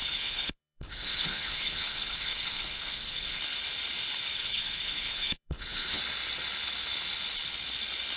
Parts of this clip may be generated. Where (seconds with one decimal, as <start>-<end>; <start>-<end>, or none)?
0.0-3.4; 4.4-6.0